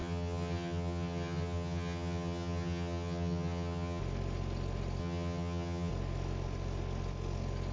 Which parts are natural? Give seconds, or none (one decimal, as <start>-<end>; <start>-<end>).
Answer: 4.0-5.0; 5.9-7.7